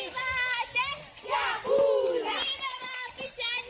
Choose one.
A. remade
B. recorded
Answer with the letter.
B